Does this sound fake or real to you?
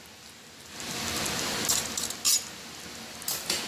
real